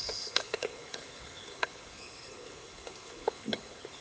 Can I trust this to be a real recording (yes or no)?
no